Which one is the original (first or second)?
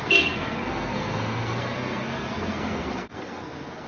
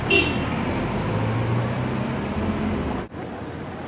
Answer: second